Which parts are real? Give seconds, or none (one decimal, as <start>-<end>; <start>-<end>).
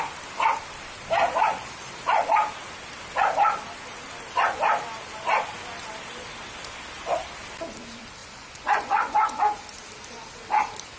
0.0-8.2; 9.4-11.0